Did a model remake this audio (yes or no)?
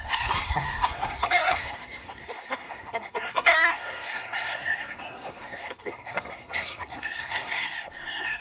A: yes